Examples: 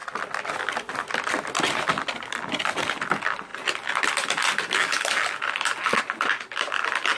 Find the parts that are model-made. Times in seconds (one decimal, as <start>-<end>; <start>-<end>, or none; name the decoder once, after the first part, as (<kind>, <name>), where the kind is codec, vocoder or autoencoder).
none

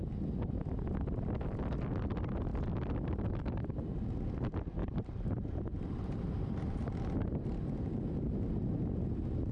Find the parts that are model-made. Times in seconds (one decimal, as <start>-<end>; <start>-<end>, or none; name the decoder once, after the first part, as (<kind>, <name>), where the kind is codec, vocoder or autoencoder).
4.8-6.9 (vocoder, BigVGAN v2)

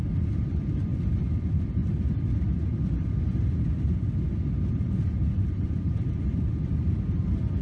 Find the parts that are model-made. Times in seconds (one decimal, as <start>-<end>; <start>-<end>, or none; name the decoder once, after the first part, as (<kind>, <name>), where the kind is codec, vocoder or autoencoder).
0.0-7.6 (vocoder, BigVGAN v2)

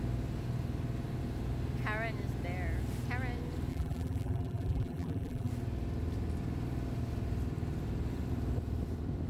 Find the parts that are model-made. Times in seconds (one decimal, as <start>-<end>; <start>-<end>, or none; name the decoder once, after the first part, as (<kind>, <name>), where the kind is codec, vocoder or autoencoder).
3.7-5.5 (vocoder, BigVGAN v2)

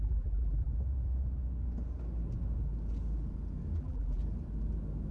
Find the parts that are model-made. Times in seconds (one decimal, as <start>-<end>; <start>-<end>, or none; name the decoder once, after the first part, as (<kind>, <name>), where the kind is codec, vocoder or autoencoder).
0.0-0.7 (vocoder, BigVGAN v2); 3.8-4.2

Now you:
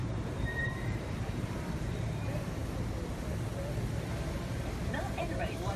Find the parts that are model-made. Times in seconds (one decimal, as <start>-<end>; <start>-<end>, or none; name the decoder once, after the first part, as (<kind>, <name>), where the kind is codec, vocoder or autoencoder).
0.0-2.6 (vocoder, BigVGAN v2); 5.2-5.8

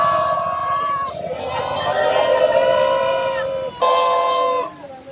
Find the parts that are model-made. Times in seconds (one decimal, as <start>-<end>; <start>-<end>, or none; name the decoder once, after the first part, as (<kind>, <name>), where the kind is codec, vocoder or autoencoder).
0.6-1.4 (vocoder, BigVGAN v2); 2.3-3.7

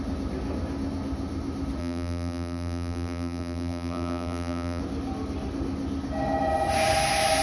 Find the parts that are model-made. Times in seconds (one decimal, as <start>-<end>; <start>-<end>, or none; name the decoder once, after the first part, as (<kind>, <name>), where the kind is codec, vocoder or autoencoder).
1.8-4.8 (vocoder, BigVGAN v2)